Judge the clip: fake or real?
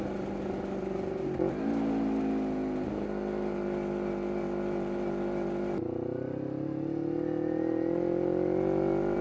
real